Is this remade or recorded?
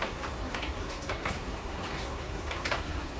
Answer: remade